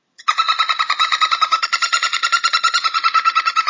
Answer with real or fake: fake